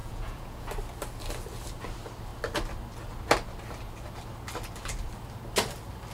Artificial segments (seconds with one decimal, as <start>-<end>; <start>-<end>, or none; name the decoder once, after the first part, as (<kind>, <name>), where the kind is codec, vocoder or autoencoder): 0.0-0.7 (vocoder, Vocos)